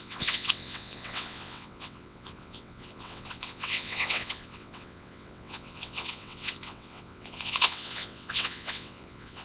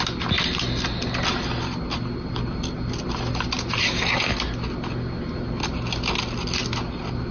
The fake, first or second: first